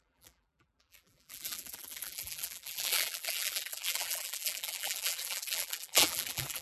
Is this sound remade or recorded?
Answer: remade